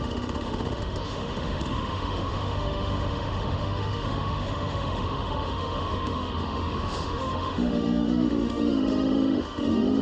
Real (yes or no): no